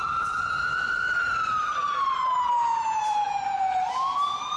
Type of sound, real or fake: real